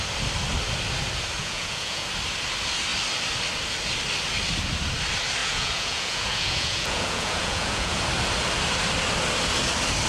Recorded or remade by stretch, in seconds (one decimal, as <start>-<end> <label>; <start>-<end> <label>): 0.0-1.4 recorded; 1.4-2.1 remade; 2.1-5.4 recorded; 5.4-8.0 remade; 8.0-10.1 recorded